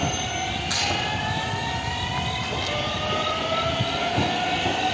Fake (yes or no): no